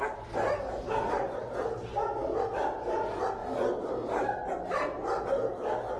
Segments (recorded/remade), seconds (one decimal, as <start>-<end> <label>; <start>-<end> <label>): 0.0-6.0 recorded